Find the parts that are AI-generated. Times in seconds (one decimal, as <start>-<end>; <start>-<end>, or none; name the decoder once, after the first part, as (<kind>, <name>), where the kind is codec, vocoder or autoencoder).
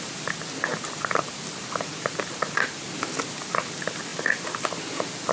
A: 0.7-3.1 (vocoder, BigVGAN v2)